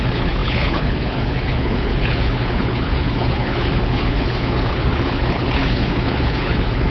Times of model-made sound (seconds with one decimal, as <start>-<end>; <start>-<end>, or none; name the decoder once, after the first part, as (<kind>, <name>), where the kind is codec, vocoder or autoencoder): 0.0-6.9 (codec, HILCodec)